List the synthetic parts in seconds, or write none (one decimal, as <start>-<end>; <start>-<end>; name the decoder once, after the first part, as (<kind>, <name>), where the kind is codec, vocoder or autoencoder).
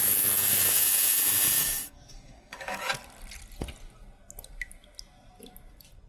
1.6-2.9 (codec, DAC)